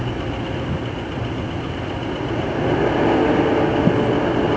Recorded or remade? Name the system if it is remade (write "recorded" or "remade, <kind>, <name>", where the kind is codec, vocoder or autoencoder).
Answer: recorded